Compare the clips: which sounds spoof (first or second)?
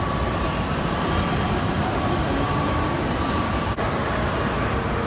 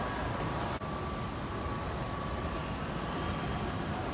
first